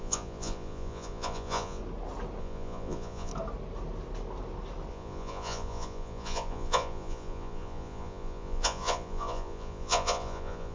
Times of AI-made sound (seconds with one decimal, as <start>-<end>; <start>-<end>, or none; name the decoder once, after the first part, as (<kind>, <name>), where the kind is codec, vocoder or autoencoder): 0.0-1.8 (vocoder, Vocos); 2.4-3.3; 4.9-10.7